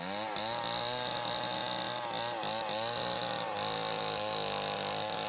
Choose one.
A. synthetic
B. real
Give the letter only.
B